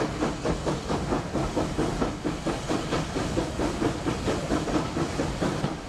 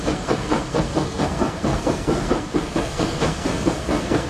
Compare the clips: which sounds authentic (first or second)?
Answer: first